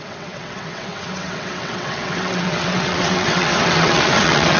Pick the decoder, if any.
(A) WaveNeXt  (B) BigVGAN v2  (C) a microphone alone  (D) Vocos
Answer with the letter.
A